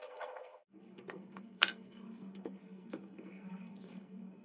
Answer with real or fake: fake